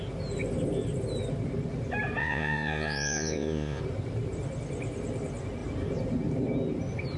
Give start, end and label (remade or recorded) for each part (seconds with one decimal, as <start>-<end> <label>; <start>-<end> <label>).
0.0-2.2 recorded; 2.2-3.8 remade; 3.8-7.2 recorded